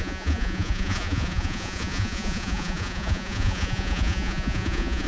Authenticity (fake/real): fake